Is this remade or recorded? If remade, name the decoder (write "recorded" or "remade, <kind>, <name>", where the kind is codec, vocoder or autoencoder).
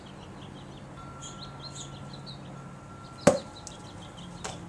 recorded